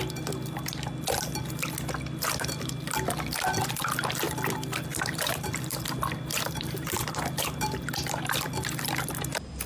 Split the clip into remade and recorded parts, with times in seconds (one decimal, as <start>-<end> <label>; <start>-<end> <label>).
0.0-4.9 recorded; 4.9-5.5 remade; 5.5-6.3 recorded; 6.3-7.9 remade; 7.9-9.7 recorded